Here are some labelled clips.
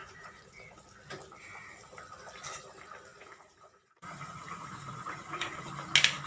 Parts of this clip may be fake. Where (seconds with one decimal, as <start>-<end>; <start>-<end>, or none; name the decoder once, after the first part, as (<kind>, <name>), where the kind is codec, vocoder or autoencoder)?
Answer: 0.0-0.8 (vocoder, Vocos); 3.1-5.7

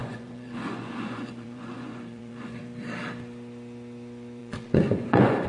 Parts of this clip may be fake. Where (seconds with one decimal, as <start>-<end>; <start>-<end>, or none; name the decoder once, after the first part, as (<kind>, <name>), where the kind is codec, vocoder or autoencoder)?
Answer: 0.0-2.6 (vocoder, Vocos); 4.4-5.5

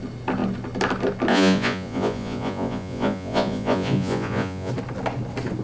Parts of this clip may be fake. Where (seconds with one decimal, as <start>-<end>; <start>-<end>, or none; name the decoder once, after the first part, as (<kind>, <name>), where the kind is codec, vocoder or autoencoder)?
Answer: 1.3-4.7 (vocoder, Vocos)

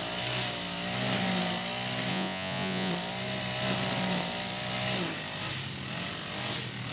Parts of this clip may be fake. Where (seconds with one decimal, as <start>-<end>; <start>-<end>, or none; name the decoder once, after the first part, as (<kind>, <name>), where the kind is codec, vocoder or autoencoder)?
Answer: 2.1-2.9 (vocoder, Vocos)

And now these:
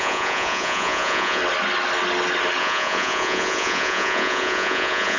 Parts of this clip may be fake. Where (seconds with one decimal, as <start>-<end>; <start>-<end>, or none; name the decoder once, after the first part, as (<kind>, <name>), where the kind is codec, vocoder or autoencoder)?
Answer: 0.0-1.4 (vocoder, Vocos); 2.6-5.2

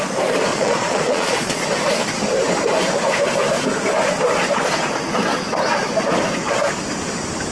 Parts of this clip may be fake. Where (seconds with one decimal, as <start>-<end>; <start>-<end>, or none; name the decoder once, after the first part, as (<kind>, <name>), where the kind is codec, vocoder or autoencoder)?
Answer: 0.5-1.7 (vocoder, Vocos)

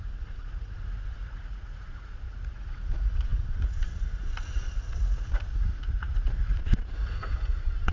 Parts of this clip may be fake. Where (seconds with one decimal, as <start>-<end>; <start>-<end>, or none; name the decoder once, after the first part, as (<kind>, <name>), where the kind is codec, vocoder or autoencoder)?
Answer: 0.0-7.9 (vocoder, Vocos)

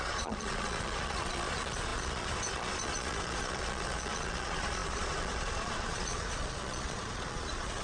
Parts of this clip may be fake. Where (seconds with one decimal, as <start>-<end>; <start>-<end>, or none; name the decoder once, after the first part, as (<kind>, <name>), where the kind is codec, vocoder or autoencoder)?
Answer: 0.0-7.8 (vocoder, Vocos)